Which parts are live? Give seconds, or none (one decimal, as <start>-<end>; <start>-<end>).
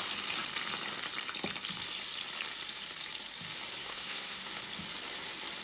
0.0-3.8; 4.5-5.6